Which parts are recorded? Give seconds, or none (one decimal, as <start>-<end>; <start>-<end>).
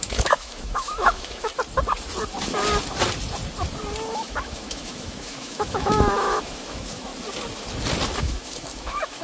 1.5-4.1; 7.1-8.2